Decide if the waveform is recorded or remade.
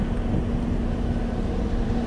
recorded